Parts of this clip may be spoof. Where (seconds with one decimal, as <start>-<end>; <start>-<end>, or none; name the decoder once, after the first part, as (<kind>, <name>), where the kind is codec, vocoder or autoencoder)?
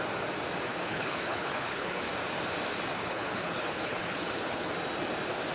0.7-2.0 (codec, HILCodec); 3.0-4.7